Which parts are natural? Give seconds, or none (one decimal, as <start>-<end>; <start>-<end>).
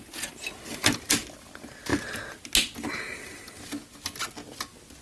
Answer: 0.0-5.0